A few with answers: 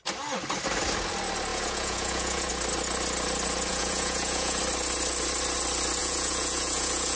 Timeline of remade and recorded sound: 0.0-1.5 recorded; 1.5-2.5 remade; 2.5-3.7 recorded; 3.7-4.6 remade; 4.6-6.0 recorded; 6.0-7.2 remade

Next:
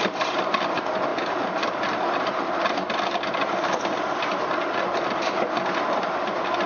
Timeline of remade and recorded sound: 0.0-6.7 recorded

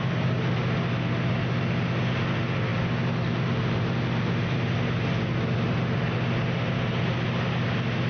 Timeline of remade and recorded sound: 0.0-8.1 recorded

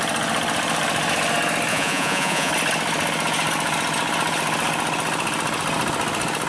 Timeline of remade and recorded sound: 0.0-1.7 recorded; 1.7-2.5 remade; 2.5-6.5 recorded

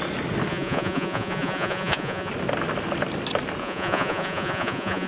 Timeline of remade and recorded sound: 0.0-0.5 recorded; 0.5-2.3 remade; 2.3-3.6 recorded; 3.6-5.1 remade

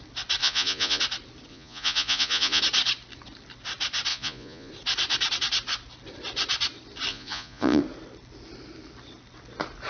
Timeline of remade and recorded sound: 0.0-0.4 recorded; 0.4-1.0 remade; 1.0-1.5 recorded; 1.5-2.6 remade; 2.6-4.1 recorded; 4.1-4.7 remade; 4.7-7.1 recorded; 7.1-7.8 remade; 7.8-9.9 recorded

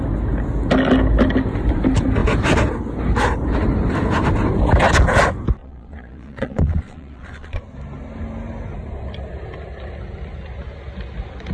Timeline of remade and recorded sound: 0.0-5.6 recorded; 5.6-7.6 remade; 7.6-11.5 recorded